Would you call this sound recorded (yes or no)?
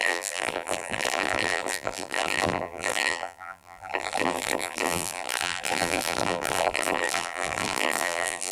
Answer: no